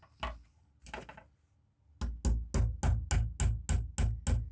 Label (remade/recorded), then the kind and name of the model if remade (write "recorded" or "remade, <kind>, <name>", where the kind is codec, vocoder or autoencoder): recorded